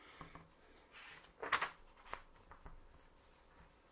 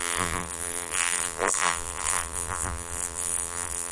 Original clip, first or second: first